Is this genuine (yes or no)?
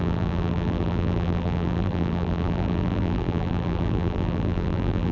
no